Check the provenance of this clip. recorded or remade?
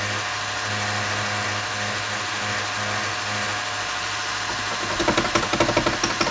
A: recorded